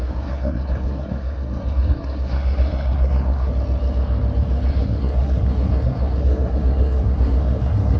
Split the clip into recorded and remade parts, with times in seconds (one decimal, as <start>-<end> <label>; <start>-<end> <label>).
0.0-3.5 remade; 3.5-4.7 recorded; 4.7-8.0 remade